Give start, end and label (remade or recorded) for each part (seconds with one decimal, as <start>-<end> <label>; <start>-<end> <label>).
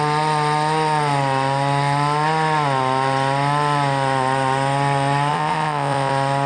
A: 0.0-5.3 recorded; 5.3-6.1 remade; 6.1-6.5 recorded